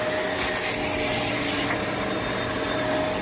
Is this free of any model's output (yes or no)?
yes